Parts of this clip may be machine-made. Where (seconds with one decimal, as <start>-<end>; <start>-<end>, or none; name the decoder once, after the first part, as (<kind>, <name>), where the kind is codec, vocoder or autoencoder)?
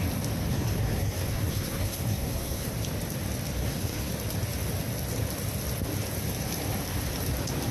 0.5-2.7 (codec, SNAC); 3.6-4.1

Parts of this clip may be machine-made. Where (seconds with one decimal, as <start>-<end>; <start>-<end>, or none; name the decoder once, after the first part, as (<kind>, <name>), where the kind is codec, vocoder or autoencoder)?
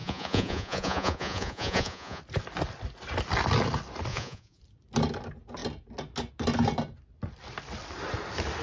0.0-2.2 (vocoder, Vocos); 4.1-4.6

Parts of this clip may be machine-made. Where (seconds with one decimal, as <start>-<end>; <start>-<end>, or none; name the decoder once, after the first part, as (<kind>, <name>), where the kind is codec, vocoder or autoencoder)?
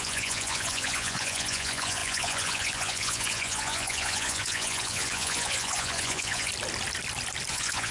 0.0-6.5 (vocoder, Vocos); 7.5-7.9